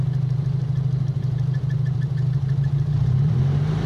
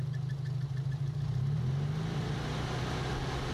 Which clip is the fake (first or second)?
first